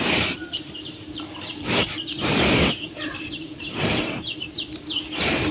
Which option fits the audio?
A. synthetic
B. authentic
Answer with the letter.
A